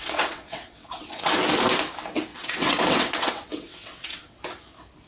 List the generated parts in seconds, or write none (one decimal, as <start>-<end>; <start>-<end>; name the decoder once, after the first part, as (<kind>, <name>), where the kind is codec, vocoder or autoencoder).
0.0-1.3 (vocoder, WaveNeXt); 2.3-4.4